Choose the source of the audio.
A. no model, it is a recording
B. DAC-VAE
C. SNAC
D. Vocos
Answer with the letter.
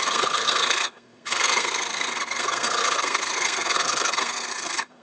C